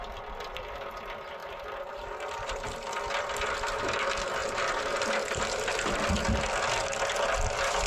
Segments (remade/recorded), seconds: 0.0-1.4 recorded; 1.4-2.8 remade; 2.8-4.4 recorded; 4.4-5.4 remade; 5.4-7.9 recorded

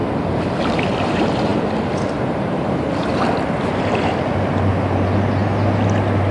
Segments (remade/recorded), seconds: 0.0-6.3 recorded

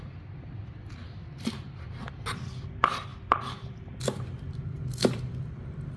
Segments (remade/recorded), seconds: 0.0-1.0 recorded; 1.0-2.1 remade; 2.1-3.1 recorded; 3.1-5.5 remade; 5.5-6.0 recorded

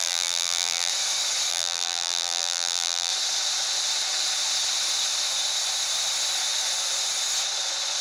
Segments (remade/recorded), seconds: 0.0-0.9 remade; 0.9-1.5 recorded; 1.5-3.1 remade; 3.1-8.0 recorded

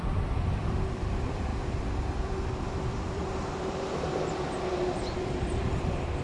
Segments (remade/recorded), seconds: 0.0-1.5 remade; 1.5-2.6 recorded; 2.6-3.2 remade; 3.2-4.7 recorded; 4.7-6.2 remade

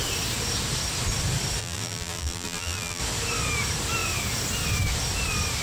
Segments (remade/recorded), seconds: 0.0-1.6 recorded; 1.6-3.0 remade; 3.0-5.6 recorded

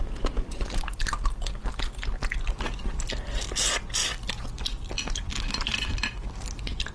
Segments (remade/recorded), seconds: 0.0-6.9 recorded

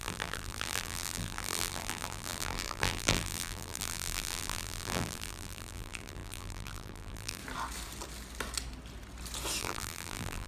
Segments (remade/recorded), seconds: 0.0-7.4 remade; 7.4-9.6 recorded; 9.6-10.5 remade